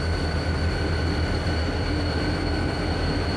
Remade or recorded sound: recorded